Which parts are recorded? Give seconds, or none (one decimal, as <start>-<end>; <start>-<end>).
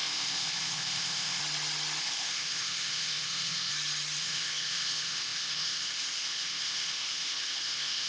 1.4-2.0; 3.7-4.2